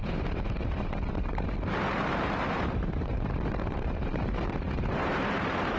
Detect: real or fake fake